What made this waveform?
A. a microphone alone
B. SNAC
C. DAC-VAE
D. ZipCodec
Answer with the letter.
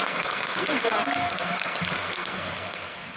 B